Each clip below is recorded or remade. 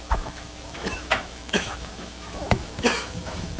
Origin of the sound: remade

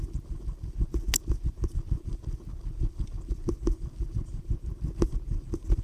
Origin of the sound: recorded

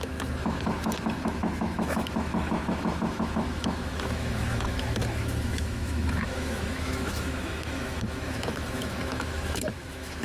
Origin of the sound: remade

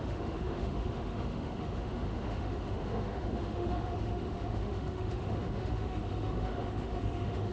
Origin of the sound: remade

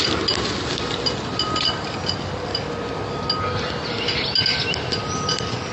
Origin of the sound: recorded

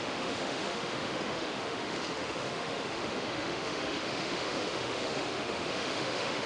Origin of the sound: remade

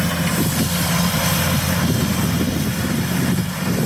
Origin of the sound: recorded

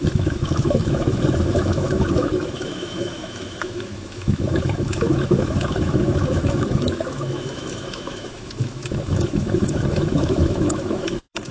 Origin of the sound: remade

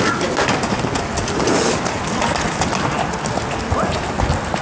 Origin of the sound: recorded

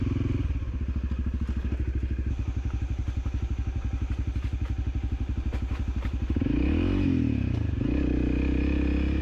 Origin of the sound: recorded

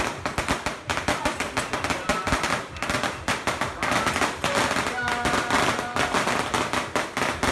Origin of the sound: recorded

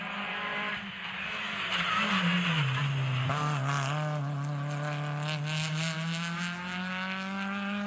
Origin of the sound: recorded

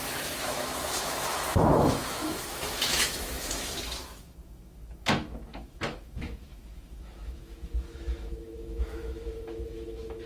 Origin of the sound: remade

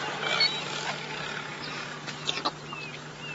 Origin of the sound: recorded